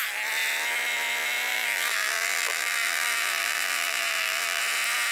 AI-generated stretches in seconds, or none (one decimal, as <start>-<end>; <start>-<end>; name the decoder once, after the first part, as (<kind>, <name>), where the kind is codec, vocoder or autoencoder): 1.5-4.6 (vocoder, BigVGAN v2)

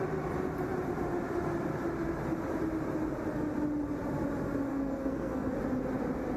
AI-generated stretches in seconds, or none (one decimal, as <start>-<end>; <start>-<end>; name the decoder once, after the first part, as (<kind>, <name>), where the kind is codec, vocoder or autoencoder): 4.7-5.5 (codec, SNAC)

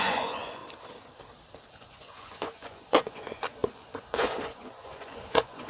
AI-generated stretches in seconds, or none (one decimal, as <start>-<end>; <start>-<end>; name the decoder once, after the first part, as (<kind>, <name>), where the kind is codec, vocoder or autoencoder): 0.0-0.6 (vocoder, Vocos); 1.7-5.7

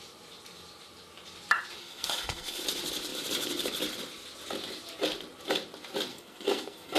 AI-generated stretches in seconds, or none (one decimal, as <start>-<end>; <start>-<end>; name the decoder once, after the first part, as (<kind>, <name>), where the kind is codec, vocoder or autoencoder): 1.8-2.6 (codec, SNAC); 6.1-7.0

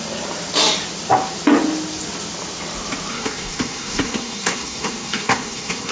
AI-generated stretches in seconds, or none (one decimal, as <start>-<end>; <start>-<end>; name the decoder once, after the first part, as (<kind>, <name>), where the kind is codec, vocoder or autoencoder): 3.1-5.9 (codec, SNAC)

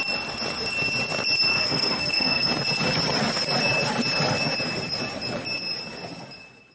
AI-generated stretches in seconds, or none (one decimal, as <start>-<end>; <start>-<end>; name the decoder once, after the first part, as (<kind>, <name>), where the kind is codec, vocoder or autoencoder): 1.5-2.5 (codec, SNAC)

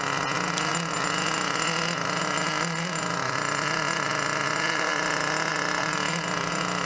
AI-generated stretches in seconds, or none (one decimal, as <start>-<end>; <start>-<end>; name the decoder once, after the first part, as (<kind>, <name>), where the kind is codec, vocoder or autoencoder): none

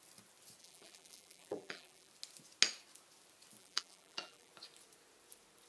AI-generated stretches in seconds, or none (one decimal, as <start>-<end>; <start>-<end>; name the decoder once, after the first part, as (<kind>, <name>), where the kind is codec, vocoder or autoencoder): 0.6-2.1 (vocoder, BigVGAN v2); 3.6-4.5